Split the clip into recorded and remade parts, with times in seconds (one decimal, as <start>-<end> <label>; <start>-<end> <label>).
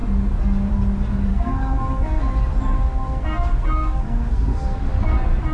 0.0-1.3 recorded; 1.3-2.2 remade; 2.2-2.7 recorded; 2.7-4.8 remade; 4.8-5.5 recorded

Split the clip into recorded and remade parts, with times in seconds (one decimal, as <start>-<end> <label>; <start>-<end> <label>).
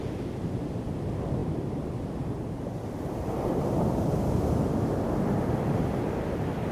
0.0-6.7 recorded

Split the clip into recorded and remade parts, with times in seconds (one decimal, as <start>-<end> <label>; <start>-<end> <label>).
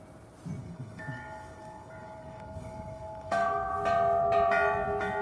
0.0-0.6 recorded; 0.6-3.7 remade; 3.7-5.2 recorded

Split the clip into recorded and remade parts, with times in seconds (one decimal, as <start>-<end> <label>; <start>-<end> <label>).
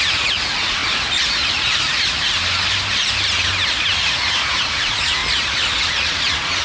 0.0-0.8 remade; 0.8-4.1 recorded; 4.1-5.2 remade; 5.2-5.8 recorded; 5.8-6.6 remade